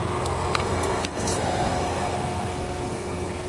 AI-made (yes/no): yes